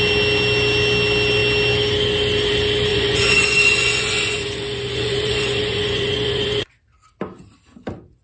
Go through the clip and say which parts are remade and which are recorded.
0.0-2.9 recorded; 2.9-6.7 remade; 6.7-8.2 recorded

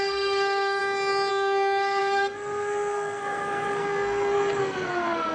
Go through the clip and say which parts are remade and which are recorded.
0.0-0.8 remade; 0.8-1.3 recorded; 1.3-5.3 remade

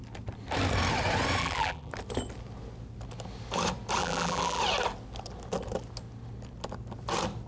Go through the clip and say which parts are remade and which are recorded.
0.0-1.4 recorded; 1.4-1.9 remade; 1.9-4.0 recorded; 4.0-4.6 remade; 4.6-7.5 recorded